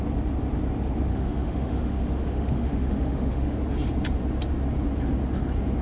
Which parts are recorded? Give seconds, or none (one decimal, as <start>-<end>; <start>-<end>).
0.0-1.1; 3.6-5.8